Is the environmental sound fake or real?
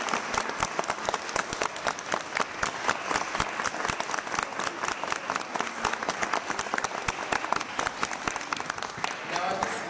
real